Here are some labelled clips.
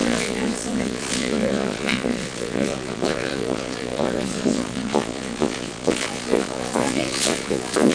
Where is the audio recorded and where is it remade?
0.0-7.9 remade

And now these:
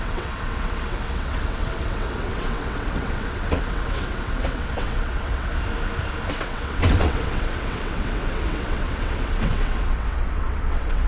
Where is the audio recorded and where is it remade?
0.0-5.5 remade; 5.5-6.3 recorded; 6.3-11.1 remade

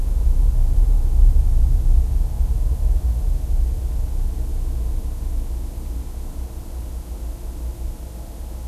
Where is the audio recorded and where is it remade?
0.0-8.7 recorded

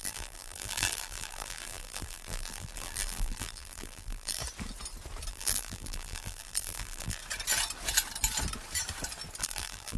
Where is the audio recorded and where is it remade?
0.0-4.4 remade; 4.4-5.3 recorded; 5.3-7.2 remade; 7.2-9.4 recorded; 9.4-10.0 remade